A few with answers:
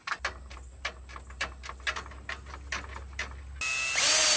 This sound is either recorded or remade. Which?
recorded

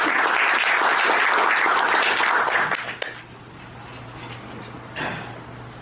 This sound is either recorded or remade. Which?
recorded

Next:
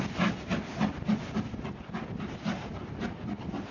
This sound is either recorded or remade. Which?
recorded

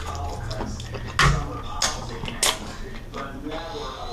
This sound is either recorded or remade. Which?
recorded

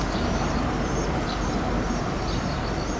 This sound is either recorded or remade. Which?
recorded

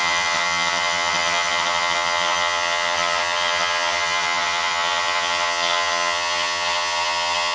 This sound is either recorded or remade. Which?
remade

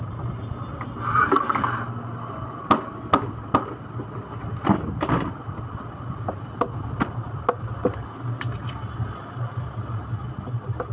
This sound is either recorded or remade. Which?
recorded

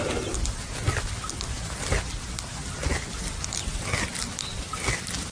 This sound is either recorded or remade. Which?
recorded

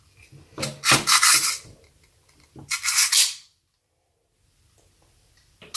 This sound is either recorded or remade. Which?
recorded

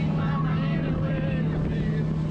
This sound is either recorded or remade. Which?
recorded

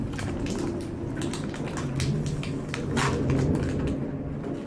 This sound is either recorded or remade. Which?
recorded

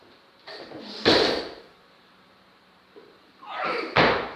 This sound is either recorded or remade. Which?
remade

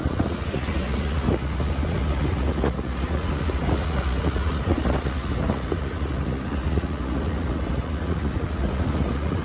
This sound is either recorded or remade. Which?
remade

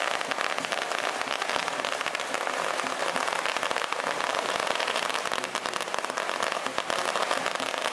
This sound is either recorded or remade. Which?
recorded